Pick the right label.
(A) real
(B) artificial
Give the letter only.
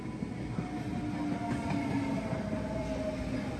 A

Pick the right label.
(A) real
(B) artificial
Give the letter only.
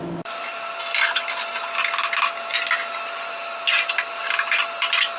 A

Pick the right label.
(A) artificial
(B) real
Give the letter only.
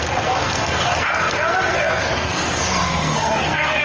A